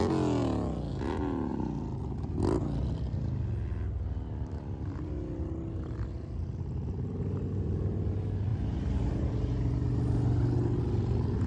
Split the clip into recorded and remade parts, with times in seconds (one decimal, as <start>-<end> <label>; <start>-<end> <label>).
0.0-11.5 recorded